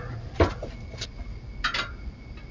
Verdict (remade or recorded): recorded